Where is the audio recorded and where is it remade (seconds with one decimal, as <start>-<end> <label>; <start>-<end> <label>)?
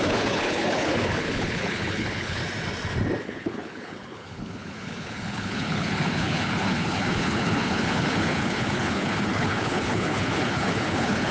0.0-2.4 remade; 2.4-3.2 recorded; 3.2-11.3 remade